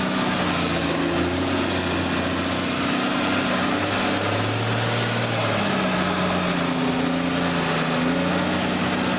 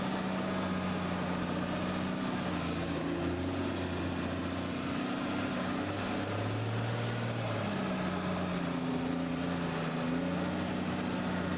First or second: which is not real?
second